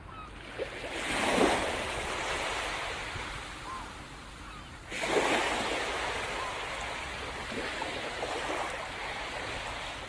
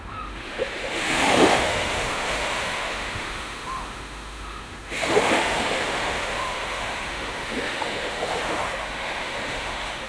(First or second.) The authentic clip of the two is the first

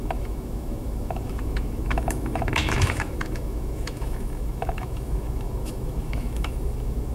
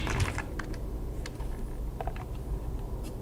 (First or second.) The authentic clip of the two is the second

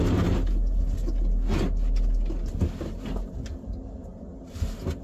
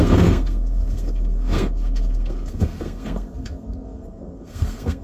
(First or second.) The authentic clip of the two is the first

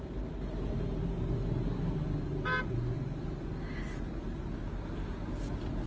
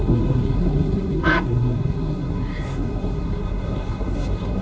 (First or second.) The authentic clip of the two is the first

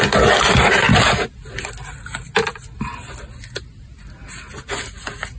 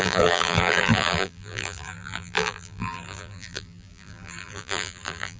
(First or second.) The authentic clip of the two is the first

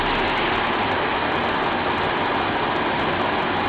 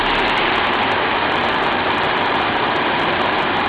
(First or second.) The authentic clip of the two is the first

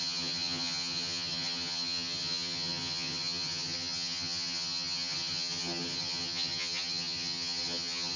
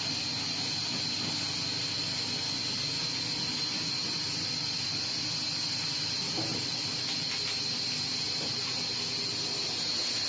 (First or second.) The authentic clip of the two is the second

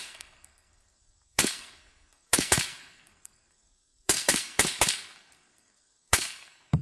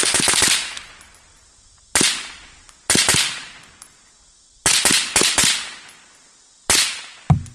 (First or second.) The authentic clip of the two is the second